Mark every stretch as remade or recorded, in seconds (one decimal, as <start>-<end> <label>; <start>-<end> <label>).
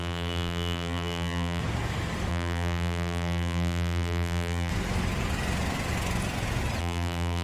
0.0-1.6 remade; 1.6-2.3 recorded; 2.3-4.7 remade; 4.7-6.8 recorded; 6.8-7.4 remade